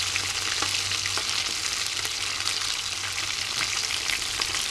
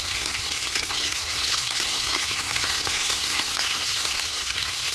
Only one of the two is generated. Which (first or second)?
second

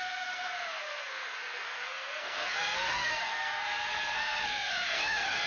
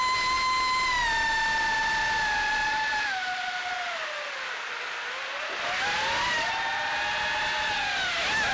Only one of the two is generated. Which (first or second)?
first